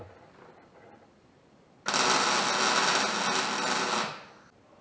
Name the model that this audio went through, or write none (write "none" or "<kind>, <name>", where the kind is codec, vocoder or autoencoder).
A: none